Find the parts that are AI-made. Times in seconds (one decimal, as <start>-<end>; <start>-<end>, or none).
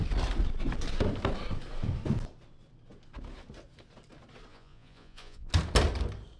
4.5-5.5